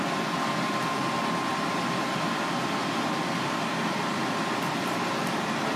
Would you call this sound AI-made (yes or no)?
no